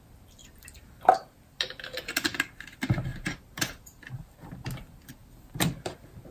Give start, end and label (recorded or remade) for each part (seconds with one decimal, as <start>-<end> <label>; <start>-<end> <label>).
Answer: 0.0-3.1 recorded; 3.1-4.5 remade; 4.5-6.3 recorded